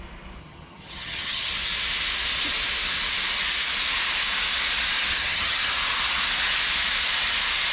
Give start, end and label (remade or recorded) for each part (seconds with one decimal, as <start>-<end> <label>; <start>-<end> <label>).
0.0-0.4 recorded; 0.4-1.5 remade; 1.5-5.1 recorded; 5.1-5.7 remade; 5.7-7.7 recorded